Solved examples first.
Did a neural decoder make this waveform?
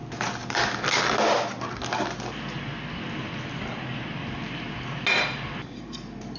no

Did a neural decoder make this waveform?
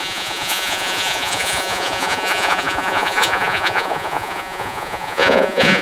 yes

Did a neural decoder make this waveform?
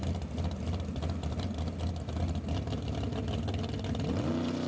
no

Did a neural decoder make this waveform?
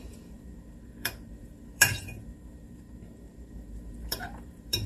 yes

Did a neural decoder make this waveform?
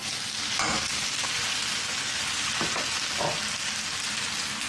no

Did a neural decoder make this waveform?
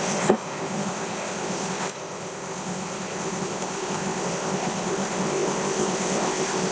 yes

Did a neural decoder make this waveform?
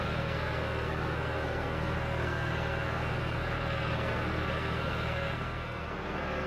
yes